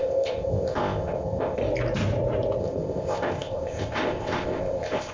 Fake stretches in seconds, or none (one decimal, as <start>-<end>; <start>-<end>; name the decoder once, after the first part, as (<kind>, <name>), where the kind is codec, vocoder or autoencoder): 0.0-1.6 (codec, ZipCodec); 2.6-5.1